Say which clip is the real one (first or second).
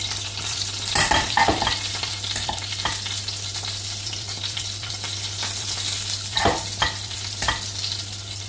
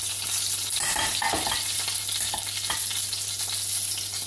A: second